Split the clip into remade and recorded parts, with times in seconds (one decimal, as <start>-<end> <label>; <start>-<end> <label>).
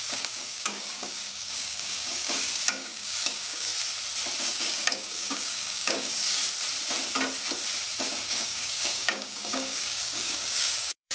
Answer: 0.0-3.7 remade; 3.7-4.4 recorded; 4.4-6.4 remade; 6.4-8.0 recorded; 8.0-11.1 remade